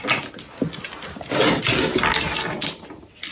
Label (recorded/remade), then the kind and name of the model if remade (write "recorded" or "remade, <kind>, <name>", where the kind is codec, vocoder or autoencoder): recorded